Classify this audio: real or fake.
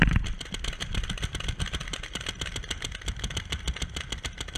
fake